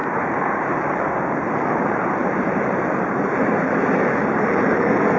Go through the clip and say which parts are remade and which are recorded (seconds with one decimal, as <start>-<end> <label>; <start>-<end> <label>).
0.0-5.2 remade

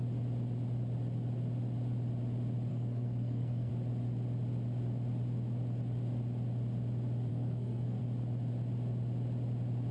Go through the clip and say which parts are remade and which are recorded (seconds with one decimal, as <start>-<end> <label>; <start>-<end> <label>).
0.0-2.7 recorded; 2.7-3.7 remade; 3.7-7.3 recorded; 7.3-8.0 remade; 8.0-9.9 recorded

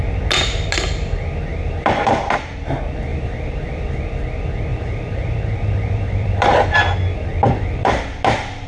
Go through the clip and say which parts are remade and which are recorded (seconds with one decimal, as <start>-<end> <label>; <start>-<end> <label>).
0.0-1.5 recorded; 1.5-2.2 remade; 2.2-3.1 recorded; 3.1-3.9 remade; 3.9-4.7 recorded; 4.7-6.8 remade; 6.8-7.3 recorded; 7.3-8.0 remade; 8.0-8.7 recorded

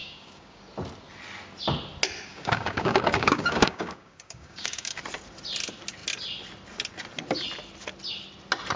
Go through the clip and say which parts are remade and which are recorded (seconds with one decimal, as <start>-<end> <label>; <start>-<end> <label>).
0.0-0.6 remade; 0.6-2.3 recorded; 2.3-5.0 remade; 5.0-8.8 recorded

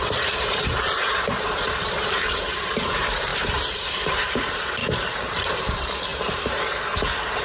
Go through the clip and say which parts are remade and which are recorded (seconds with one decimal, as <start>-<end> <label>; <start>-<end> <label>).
0.0-7.4 remade

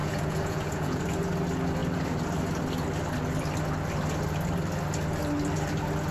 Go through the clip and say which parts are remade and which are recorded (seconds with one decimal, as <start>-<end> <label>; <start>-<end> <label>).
0.0-1.0 remade; 1.0-6.1 recorded

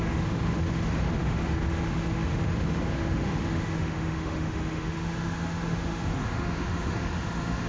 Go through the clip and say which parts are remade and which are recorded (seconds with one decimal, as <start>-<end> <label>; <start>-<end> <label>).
0.0-7.7 remade